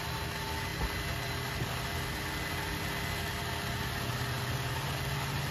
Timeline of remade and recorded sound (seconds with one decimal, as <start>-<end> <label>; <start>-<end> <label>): 0.0-5.5 recorded